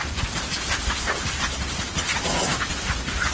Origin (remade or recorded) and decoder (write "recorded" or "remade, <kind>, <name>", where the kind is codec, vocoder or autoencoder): remade, vocoder, BigVGAN v2